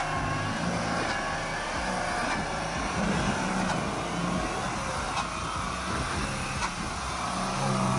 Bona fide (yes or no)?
yes